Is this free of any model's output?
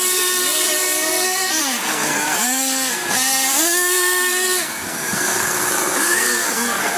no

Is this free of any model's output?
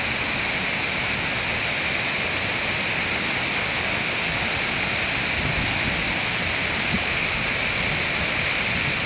yes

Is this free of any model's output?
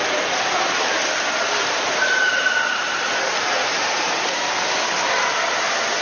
yes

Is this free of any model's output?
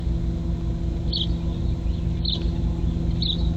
yes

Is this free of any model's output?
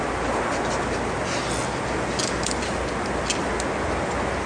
yes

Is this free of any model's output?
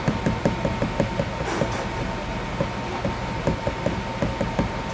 yes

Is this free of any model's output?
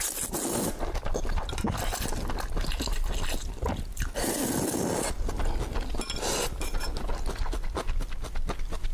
yes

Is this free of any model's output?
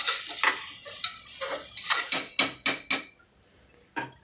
yes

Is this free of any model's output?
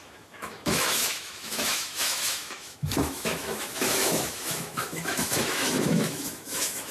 no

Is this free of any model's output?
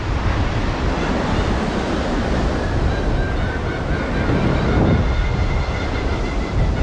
yes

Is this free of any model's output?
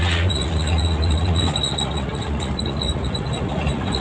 no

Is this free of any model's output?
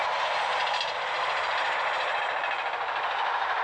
yes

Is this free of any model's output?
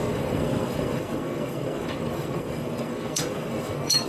no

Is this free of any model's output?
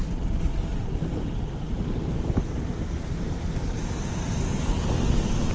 yes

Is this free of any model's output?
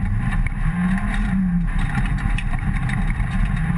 no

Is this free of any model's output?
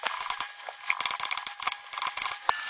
yes